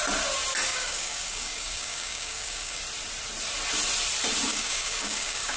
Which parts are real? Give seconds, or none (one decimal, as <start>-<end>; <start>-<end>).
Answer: 0.0-0.7; 2.8-4.5